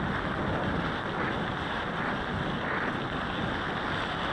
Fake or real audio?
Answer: real